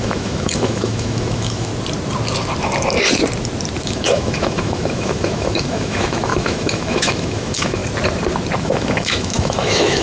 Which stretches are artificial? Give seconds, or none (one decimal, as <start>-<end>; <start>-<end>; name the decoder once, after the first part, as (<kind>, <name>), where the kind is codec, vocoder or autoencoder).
0.0-1.7 (autoencoder, DAC-VAE); 3.8-7.8; 8.6-10.0